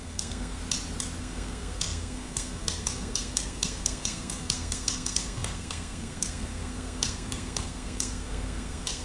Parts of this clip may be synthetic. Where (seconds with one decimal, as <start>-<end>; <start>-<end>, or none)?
0.0-0.6; 1.2-9.0